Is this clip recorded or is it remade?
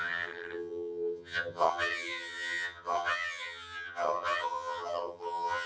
remade